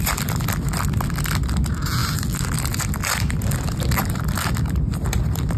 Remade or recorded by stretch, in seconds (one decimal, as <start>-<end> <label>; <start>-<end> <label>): 0.0-2.0 recorded; 2.0-5.6 remade